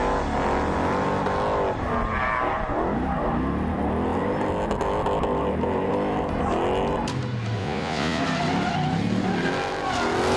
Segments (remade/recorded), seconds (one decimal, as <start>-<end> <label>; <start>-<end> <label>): 0.0-7.6 recorded; 7.6-8.2 remade; 8.2-10.4 recorded